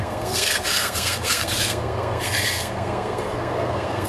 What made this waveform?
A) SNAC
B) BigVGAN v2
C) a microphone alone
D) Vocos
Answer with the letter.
A